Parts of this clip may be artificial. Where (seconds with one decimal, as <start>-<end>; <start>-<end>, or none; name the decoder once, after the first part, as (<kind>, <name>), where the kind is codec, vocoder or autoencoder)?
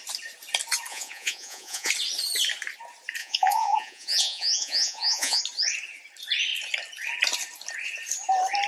0.9-1.9 (vocoder, Vocos); 3.2-5.4